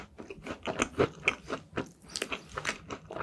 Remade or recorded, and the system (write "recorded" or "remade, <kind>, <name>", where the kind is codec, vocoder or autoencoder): recorded